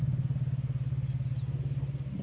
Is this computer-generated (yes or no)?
no